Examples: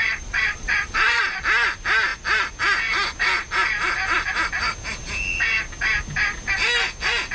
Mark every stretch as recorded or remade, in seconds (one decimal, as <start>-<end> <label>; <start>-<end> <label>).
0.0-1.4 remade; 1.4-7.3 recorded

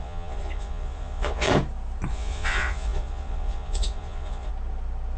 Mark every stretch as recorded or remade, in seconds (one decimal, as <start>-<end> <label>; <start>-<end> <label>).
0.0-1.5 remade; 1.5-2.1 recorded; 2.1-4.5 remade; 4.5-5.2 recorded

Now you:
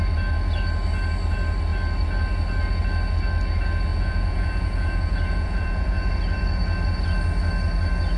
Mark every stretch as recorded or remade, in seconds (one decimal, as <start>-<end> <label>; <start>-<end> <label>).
0.0-3.9 recorded; 3.9-6.1 remade; 6.1-8.2 recorded

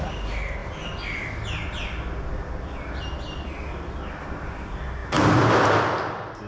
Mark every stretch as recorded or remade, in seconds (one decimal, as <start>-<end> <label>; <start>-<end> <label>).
0.0-6.5 recorded

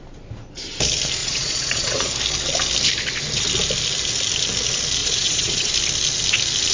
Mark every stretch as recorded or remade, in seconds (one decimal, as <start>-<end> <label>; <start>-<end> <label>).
0.0-1.2 recorded; 1.2-2.1 remade; 2.1-5.0 recorded; 5.0-5.7 remade; 5.7-6.7 recorded

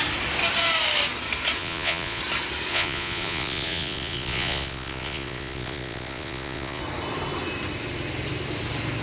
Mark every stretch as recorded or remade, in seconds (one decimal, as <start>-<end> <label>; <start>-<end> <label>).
0.0-1.6 recorded; 1.6-2.2 remade; 2.2-2.7 recorded; 2.7-6.8 remade; 6.8-9.0 recorded

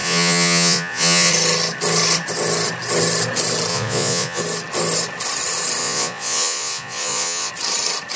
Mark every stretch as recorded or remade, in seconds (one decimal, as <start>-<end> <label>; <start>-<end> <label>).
0.0-1.3 remade; 1.3-3.7 recorded; 3.7-4.4 remade; 4.4-5.8 recorded; 5.8-7.5 remade; 7.5-8.2 recorded